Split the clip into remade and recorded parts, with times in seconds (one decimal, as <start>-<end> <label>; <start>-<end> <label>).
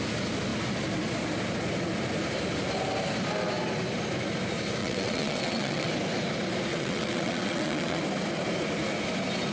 0.0-4.8 recorded; 4.8-5.9 remade; 5.9-6.7 recorded; 6.7-8.0 remade; 8.0-9.5 recorded